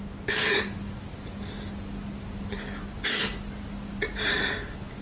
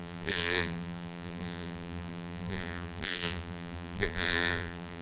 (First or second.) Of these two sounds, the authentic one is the first